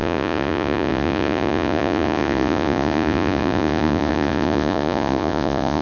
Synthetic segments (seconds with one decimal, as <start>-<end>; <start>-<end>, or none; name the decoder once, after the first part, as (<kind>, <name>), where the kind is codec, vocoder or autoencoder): 0.0-5.8 (vocoder, Vocos)